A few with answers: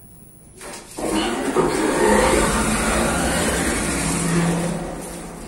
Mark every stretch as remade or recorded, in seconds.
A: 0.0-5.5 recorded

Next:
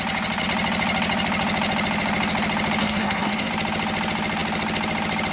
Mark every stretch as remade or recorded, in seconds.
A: 0.0-2.8 recorded; 2.8-3.5 remade; 3.5-5.3 recorded

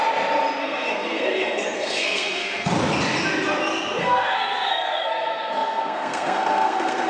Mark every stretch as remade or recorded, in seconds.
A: 0.0-0.6 recorded; 0.6-2.7 remade; 2.7-4.0 recorded; 4.0-7.1 remade

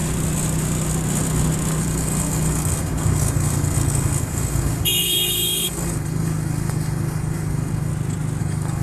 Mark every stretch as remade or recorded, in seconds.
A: 0.0-1.8 recorded; 1.8-7.9 remade; 7.9-8.4 recorded; 8.4-8.8 remade

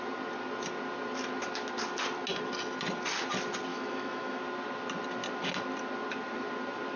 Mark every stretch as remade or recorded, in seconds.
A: 0.0-3.7 recorded; 3.7-4.4 remade; 4.4-7.0 recorded